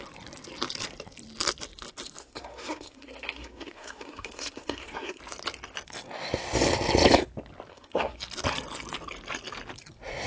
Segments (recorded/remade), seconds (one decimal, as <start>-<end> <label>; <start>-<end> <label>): 0.0-2.2 recorded; 2.2-5.2 remade; 5.2-7.7 recorded; 7.7-8.2 remade; 8.2-10.3 recorded